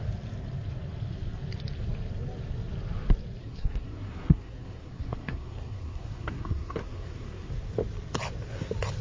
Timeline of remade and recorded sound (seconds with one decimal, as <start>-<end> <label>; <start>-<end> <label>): 0.0-3.4 recorded; 3.4-7.5 remade; 7.5-9.0 recorded